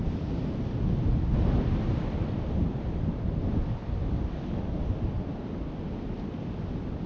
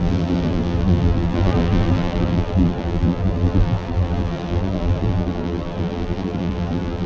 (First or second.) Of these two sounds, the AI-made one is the second